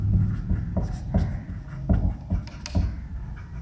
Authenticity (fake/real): real